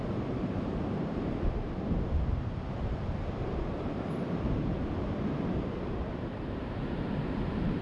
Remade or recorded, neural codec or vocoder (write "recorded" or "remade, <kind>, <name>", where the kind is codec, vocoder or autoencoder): remade, vocoder, BigVGAN v2